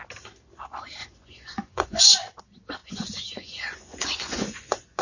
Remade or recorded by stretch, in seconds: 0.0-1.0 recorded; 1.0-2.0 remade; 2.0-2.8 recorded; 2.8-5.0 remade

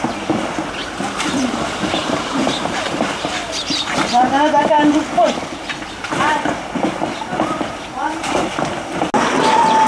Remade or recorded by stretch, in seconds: 0.0-2.0 recorded; 2.0-5.0 remade; 5.0-9.9 recorded

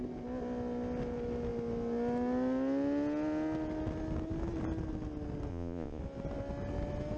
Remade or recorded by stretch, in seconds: 0.0-5.5 recorded; 5.5-6.0 remade; 6.0-7.2 recorded

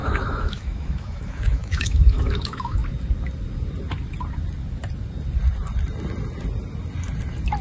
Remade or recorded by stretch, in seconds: 0.0-2.8 remade; 2.8-7.6 recorded

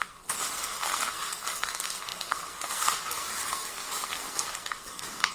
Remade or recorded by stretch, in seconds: 0.0-5.3 remade